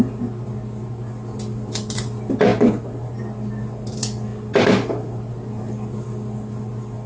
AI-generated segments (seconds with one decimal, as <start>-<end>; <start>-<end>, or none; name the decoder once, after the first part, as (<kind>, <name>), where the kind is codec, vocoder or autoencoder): none